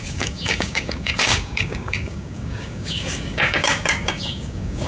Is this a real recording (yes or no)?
no